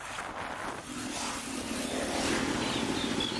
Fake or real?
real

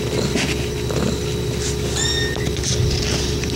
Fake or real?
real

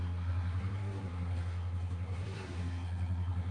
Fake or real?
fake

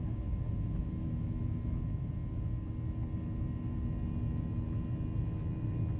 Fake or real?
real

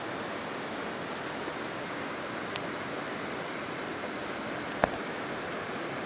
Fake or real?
real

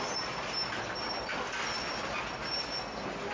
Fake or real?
real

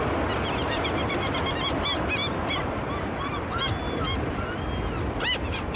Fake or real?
real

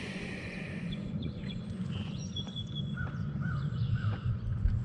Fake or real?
fake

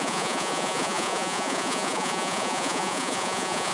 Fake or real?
fake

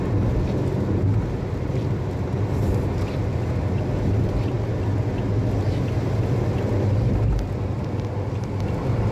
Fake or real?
real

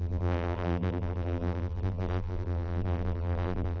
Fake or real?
fake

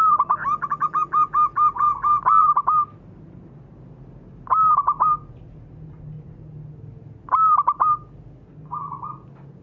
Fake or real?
real